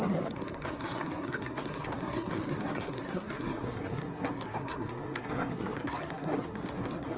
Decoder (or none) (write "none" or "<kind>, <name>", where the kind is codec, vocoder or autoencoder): codec, SNAC